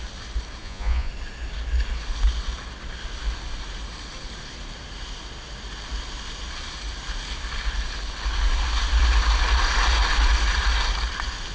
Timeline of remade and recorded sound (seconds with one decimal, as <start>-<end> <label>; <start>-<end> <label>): 0.0-0.6 recorded; 0.6-1.1 remade; 1.1-11.5 recorded